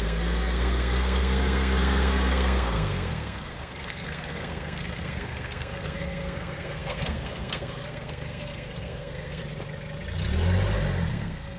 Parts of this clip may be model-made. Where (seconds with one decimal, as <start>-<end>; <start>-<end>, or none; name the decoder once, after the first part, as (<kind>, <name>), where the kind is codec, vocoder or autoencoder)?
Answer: 0.0-9.4 (codec, SNAC); 11.1-11.6